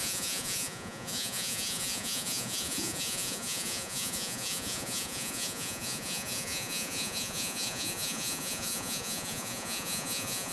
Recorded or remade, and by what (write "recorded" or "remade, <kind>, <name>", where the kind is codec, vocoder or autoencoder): remade, vocoder, Vocos